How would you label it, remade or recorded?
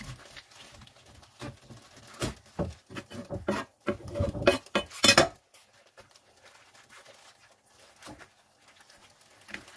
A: recorded